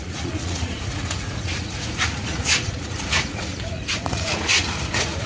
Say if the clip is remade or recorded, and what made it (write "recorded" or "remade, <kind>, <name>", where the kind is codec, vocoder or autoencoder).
remade, vocoder, Vocos